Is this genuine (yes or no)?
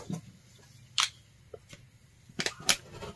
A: yes